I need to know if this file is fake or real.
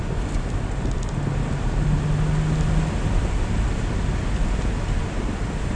real